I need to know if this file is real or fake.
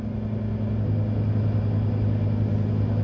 real